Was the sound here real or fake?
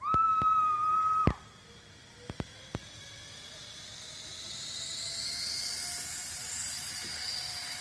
real